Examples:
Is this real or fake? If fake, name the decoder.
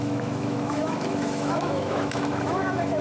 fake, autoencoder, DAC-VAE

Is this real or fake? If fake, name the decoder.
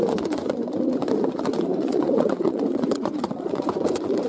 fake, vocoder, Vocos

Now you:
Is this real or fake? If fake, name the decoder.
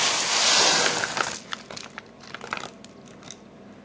real